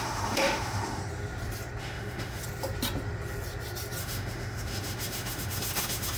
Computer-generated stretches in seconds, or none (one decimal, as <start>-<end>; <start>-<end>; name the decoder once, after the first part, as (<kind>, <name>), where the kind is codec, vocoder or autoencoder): 0.0-1.0 (autoencoder, DAC-VAE); 1.8-2.4; 4.0-6.2